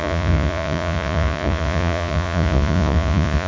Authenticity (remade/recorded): remade